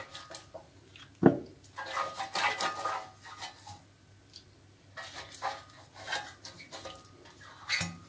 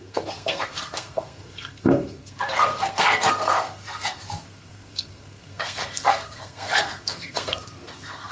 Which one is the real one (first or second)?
first